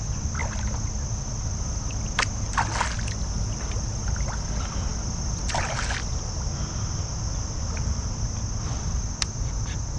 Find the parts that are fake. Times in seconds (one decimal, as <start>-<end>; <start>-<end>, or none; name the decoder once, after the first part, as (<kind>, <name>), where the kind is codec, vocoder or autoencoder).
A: none